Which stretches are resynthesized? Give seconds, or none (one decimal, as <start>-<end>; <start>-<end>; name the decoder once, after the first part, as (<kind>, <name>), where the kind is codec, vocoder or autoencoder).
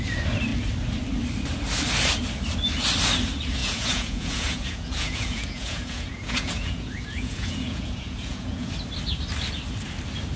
3.6-8.7 (vocoder, Vocos)